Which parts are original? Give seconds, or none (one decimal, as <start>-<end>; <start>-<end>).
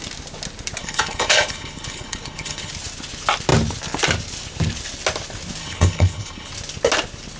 0.0-0.8; 2.7-5.6; 6.5-7.4